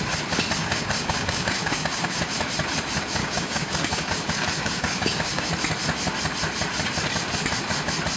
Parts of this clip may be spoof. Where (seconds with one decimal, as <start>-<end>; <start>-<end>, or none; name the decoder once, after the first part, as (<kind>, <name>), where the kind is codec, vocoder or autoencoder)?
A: 0.6-2.2 (codec, DAC); 3.2-5.5